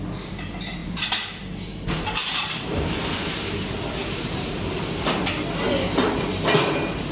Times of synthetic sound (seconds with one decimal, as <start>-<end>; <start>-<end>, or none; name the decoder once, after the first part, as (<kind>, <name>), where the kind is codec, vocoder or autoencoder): 0.8-3.5 (vocoder, BigVGAN v2); 4.0-5.2